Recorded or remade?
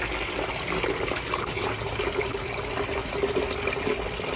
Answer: recorded